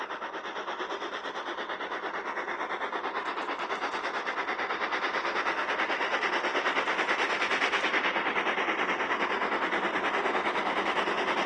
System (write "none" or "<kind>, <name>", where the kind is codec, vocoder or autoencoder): none